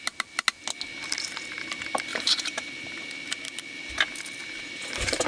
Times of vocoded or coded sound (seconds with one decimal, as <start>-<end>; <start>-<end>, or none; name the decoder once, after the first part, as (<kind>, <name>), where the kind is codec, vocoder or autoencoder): 2.1-2.7 (vocoder, BigVGAN v2); 4.4-5.3